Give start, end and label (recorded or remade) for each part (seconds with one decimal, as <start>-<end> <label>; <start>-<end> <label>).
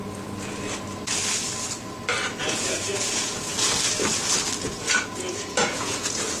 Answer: 0.0-2.4 recorded; 2.4-3.5 remade; 3.5-4.6 recorded; 4.6-6.4 remade